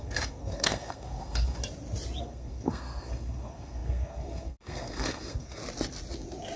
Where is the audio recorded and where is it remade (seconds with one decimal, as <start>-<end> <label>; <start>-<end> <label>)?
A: 0.0-1.6 remade; 1.6-2.2 recorded; 2.2-5.6 remade; 5.6-6.6 recorded